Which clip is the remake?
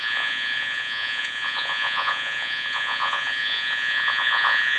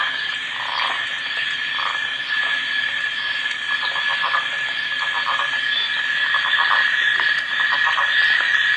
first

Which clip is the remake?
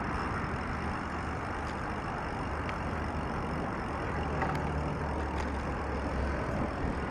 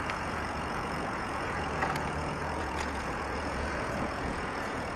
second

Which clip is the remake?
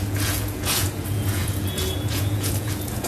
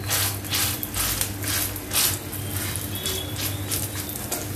first